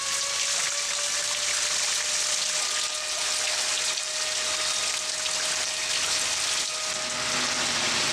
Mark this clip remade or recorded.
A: recorded